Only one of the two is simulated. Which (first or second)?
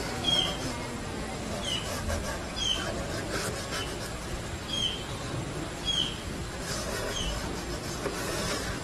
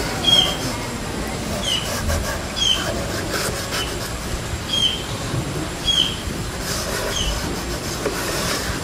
second